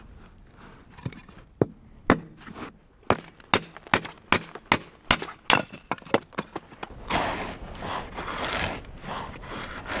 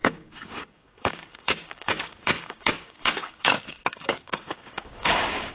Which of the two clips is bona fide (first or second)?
first